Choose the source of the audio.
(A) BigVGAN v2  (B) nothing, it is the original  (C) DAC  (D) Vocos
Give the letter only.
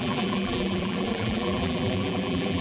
A